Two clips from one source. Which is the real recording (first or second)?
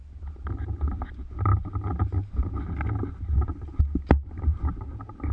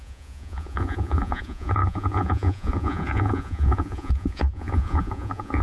first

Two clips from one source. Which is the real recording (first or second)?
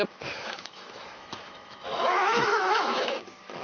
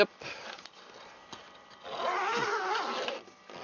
second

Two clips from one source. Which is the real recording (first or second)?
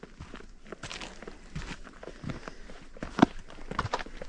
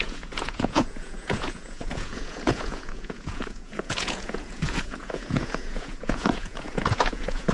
first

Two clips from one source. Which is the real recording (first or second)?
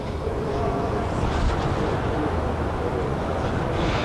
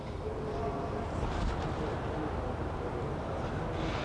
second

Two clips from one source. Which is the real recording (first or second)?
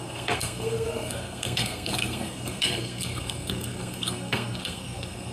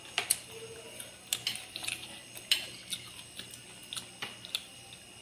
second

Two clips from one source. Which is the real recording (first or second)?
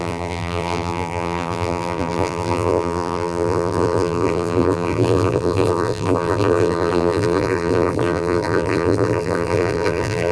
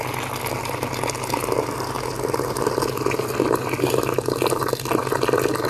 second